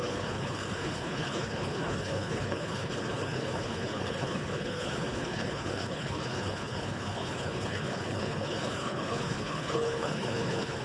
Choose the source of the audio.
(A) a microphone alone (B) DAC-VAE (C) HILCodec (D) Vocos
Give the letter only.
C